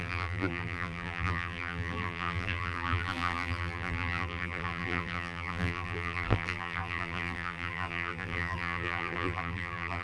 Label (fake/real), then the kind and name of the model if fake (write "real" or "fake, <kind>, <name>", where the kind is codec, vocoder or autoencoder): fake, vocoder, BigVGAN v2